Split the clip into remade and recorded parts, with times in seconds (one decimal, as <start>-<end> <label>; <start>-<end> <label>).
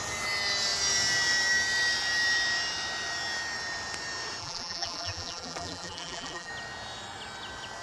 0.0-4.4 recorded; 4.4-6.5 remade; 6.5-7.8 recorded